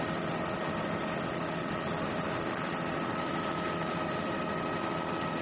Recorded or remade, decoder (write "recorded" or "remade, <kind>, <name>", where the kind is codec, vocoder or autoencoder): recorded